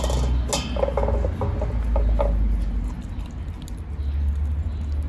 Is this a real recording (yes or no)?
yes